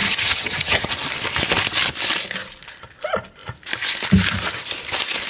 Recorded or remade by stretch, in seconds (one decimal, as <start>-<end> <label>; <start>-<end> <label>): 0.0-0.9 remade; 0.9-5.3 recorded